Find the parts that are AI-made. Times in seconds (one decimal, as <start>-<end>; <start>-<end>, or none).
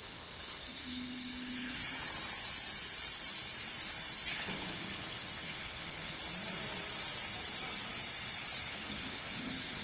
0.0-1.8; 4.3-6.2; 8.7-9.8